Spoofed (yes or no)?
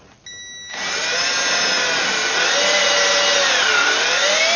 no